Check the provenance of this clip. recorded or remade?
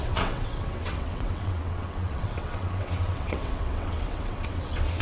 remade